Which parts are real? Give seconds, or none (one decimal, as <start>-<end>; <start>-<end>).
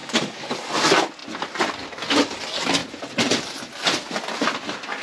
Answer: 0.7-5.0